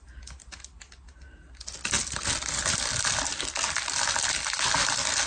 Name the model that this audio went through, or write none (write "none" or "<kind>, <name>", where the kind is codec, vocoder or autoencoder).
none